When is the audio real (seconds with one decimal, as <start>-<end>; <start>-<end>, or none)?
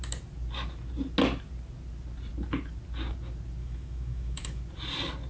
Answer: 0.0-3.6; 4.6-5.3